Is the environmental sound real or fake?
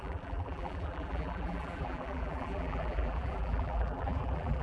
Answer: fake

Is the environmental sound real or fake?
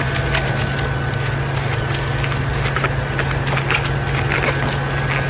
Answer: real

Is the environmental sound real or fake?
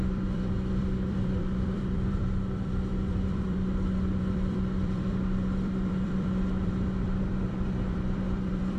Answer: fake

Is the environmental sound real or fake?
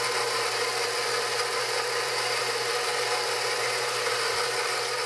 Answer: fake